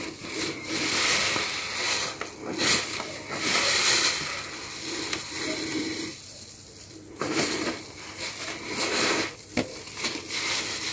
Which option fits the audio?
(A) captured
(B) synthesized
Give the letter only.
A